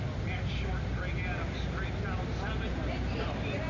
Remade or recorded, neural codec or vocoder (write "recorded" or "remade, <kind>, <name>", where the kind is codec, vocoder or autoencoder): recorded